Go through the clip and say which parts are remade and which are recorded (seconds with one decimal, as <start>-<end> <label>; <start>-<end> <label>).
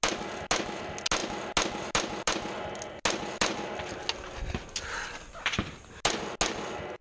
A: 0.0-7.0 recorded